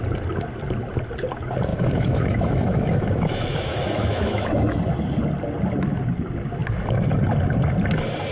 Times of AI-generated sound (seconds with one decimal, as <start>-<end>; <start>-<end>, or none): 1.7-4.8